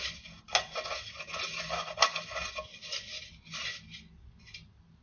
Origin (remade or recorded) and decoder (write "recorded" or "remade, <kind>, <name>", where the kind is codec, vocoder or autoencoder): recorded